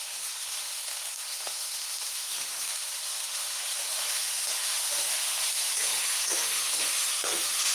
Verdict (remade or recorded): remade